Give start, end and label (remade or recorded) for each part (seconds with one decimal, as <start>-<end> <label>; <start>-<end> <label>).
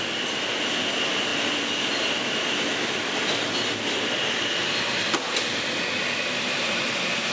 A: 0.0-7.3 recorded